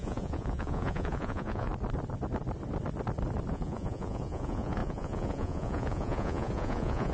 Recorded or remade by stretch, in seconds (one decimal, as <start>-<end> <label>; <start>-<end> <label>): 0.0-1.7 remade; 1.7-3.5 recorded; 3.5-7.1 remade